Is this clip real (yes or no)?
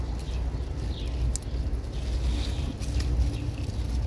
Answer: yes